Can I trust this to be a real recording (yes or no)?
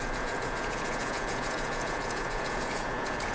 no